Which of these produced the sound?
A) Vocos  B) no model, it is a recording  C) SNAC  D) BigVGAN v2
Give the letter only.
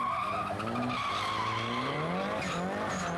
B